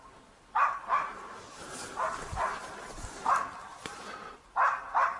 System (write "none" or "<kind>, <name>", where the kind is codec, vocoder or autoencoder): none